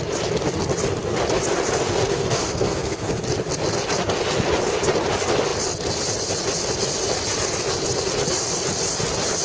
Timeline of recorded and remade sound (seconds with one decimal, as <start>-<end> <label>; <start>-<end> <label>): 0.0-2.1 recorded; 2.1-3.2 remade; 3.2-9.4 recorded